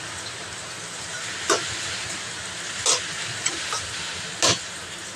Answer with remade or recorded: recorded